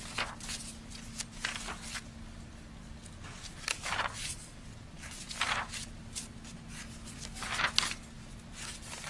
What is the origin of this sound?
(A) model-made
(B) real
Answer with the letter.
B